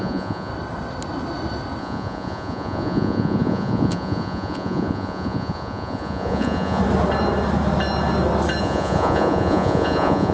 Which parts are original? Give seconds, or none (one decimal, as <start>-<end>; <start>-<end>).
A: 0.5-1.8; 6.8-8.6